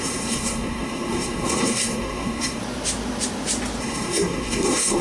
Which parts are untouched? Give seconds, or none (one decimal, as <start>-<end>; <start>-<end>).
2.6-3.8